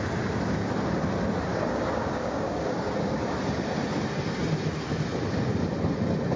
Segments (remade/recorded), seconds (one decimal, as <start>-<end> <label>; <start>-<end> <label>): 0.0-1.5 recorded; 1.5-2.9 remade; 2.9-6.4 recorded

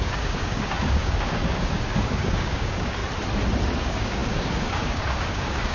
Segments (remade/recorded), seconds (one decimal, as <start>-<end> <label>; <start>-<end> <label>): 0.0-3.0 remade; 3.0-3.8 recorded; 3.8-5.7 remade

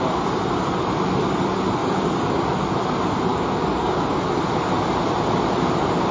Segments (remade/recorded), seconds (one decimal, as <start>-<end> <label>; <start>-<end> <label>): 0.0-1.8 recorded; 1.8-2.4 remade; 2.4-3.3 recorded; 3.3-4.2 remade; 4.2-6.1 recorded

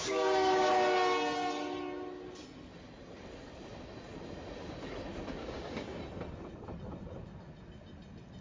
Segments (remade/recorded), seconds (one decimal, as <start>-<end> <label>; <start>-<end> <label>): 0.0-0.7 remade; 0.7-5.4 recorded; 5.4-6.0 remade; 6.0-8.4 recorded

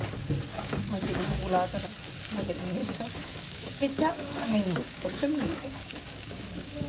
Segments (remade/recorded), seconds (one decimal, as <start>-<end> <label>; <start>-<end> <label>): 0.0-0.5 recorded; 0.5-1.7 remade; 1.7-2.8 recorded; 2.8-6.9 remade